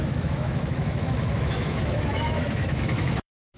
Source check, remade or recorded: remade